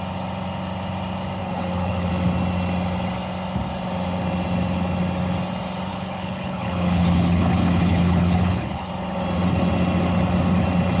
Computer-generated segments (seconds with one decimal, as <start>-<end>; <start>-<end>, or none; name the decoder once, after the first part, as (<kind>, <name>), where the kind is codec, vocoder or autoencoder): 1.4-2.1 (codec, HILCodec); 5.9-8.9